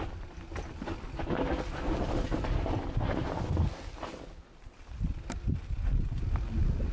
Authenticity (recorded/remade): recorded